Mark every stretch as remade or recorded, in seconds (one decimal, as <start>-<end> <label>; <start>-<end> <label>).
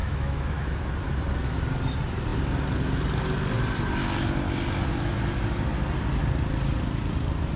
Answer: 0.0-0.8 remade; 0.8-7.6 recorded